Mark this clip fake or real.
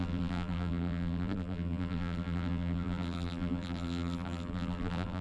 fake